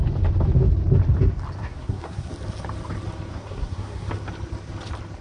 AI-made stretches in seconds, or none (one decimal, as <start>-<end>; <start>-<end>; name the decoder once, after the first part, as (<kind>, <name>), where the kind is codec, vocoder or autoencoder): 1.6-2.3 (codec, SNAC); 3.3-4.1